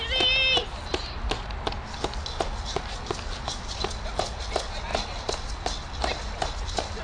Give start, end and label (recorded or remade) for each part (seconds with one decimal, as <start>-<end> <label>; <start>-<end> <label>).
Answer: 0.0-7.0 recorded